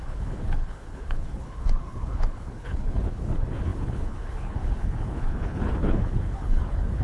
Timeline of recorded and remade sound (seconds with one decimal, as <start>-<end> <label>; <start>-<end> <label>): 0.0-7.0 remade